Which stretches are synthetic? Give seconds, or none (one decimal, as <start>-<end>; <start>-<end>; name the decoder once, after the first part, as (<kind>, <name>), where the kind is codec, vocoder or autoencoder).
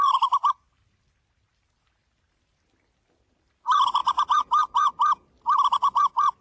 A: none